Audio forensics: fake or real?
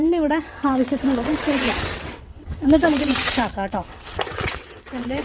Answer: fake